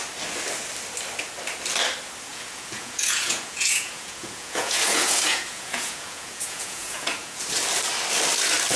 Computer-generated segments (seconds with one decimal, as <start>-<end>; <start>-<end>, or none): 2.3-7.4